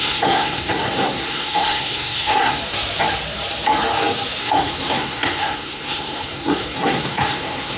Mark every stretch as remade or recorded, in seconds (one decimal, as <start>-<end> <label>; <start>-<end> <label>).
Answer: 0.0-2.6 remade; 2.6-4.4 recorded; 4.4-7.8 remade